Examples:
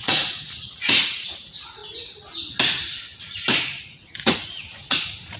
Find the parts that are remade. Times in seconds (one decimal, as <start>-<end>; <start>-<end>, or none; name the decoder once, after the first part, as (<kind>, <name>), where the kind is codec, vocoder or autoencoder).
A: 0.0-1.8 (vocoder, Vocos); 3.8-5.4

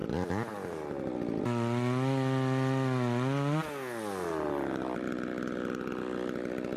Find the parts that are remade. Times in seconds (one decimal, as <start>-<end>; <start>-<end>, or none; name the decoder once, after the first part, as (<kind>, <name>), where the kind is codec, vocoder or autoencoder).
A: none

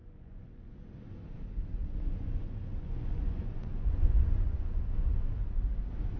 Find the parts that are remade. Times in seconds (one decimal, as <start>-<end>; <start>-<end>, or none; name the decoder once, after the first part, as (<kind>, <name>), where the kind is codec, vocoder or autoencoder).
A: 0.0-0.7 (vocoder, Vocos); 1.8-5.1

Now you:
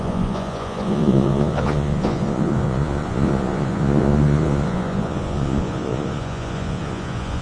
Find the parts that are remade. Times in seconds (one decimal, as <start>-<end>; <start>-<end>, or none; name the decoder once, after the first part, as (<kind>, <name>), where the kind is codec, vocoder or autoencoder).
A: 0.0-7.4 (vocoder, Vocos)

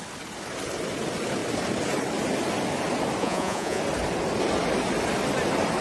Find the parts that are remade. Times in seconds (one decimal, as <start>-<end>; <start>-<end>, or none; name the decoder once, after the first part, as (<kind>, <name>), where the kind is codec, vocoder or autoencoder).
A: 3.2-3.8 (vocoder, Vocos)

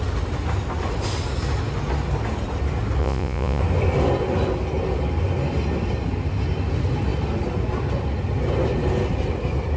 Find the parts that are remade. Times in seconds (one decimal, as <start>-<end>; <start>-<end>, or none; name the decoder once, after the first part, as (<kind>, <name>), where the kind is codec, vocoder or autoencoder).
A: 3.0-3.6 (vocoder, Vocos)